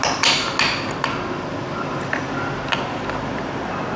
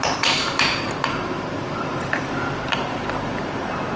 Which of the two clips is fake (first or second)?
second